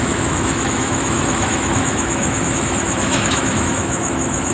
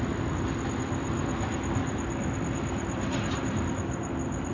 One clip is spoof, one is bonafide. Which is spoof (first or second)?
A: first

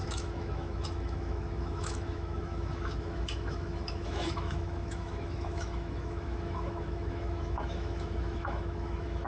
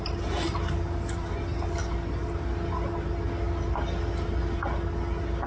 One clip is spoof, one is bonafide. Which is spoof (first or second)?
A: first